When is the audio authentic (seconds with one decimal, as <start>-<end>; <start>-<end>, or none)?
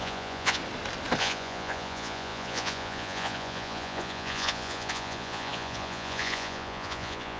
0.6-1.2